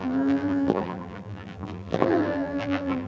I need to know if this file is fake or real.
fake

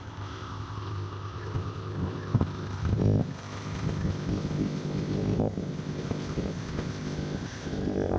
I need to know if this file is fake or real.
fake